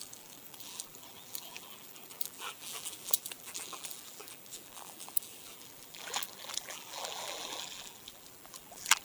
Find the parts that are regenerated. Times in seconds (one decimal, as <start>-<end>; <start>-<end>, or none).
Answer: 0.0-9.0